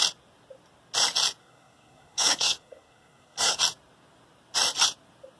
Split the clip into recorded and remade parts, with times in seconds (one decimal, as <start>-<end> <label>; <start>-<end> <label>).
0.0-1.4 recorded; 1.4-3.6 remade; 3.6-5.4 recorded